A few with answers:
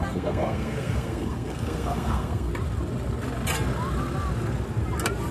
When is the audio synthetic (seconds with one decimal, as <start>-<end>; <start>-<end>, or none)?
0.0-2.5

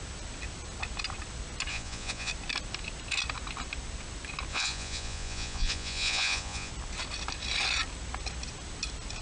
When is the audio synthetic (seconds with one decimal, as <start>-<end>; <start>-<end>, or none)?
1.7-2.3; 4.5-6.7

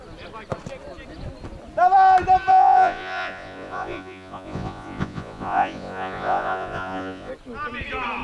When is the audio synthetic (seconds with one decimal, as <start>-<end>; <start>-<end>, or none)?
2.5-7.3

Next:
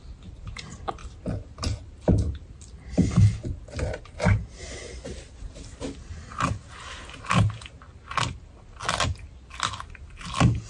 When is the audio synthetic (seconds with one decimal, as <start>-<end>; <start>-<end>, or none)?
none

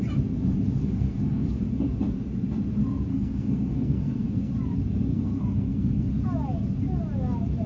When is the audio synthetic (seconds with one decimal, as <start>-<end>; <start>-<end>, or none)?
0.8-1.6; 3.1-4.5; 5.1-6.1

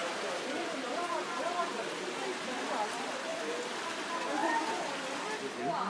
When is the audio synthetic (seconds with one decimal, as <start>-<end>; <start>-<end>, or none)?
0.0-1.7; 3.3-3.9